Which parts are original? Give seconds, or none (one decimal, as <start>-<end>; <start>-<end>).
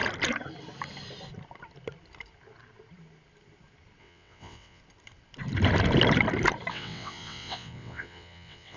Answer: 0.0-4.0; 4.8-6.7